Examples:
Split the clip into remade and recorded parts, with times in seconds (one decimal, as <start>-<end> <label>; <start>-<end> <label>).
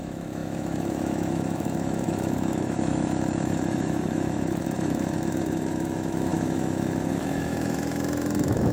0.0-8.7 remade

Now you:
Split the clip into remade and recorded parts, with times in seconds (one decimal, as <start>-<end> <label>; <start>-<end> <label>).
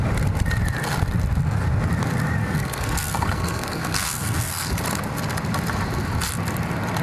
0.0-2.4 recorded; 2.4-4.8 remade; 4.8-7.0 recorded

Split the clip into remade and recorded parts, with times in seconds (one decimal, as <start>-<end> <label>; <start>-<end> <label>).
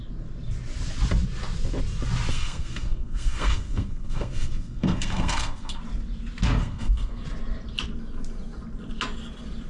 0.0-2.3 recorded; 2.3-5.8 remade; 5.8-6.6 recorded; 6.6-7.2 remade; 7.2-9.7 recorded